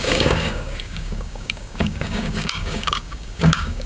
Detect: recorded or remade remade